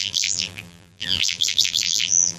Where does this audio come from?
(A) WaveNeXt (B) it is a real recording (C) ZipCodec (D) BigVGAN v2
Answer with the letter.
D